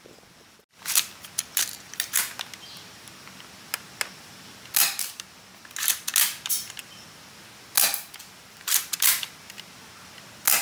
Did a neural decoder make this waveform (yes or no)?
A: no